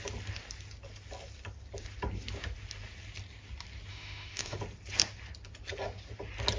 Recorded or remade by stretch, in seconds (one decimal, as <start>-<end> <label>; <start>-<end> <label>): 0.0-3.9 recorded; 3.9-4.6 remade; 4.6-6.6 recorded

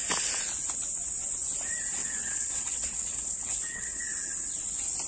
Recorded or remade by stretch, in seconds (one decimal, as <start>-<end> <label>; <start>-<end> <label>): 0.0-2.0 recorded; 2.0-4.0 remade; 4.0-5.1 recorded